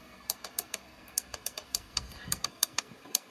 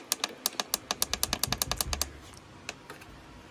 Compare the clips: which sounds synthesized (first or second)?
first